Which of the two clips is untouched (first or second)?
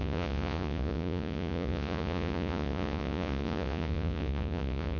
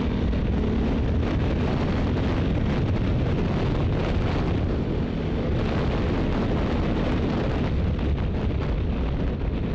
second